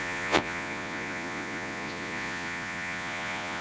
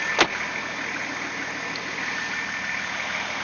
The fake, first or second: first